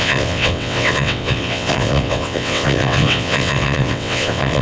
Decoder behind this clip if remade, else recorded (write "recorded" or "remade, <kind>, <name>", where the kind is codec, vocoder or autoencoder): remade, vocoder, WaveNeXt